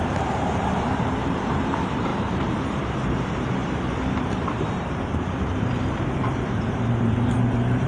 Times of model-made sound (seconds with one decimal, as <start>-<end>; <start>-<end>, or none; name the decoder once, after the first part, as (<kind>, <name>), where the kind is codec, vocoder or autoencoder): 0.0-7.9 (vocoder, BigVGAN v2)